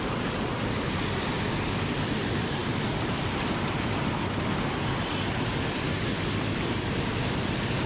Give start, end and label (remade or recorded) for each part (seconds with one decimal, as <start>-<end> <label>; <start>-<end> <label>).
0.0-7.9 recorded